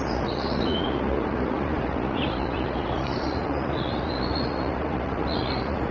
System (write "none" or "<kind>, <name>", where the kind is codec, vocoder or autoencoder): vocoder, Vocos